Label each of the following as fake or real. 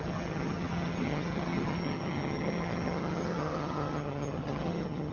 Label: fake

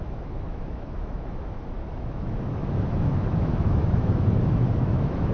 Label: fake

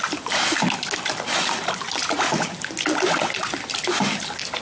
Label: real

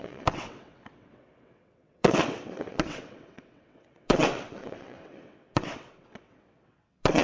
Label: fake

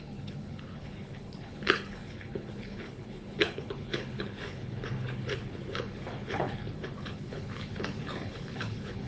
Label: fake